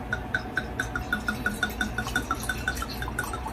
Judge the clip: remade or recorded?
recorded